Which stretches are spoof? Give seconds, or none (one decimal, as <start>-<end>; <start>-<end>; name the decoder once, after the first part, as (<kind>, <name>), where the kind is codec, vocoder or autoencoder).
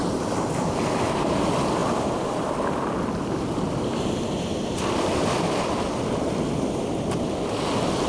0.0-0.6 (vocoder, BigVGAN v2)